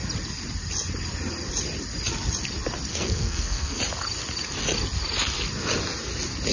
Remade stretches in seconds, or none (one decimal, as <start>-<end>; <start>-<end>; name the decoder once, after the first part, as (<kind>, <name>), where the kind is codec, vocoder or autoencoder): 2.9-3.8 (codec, SNAC)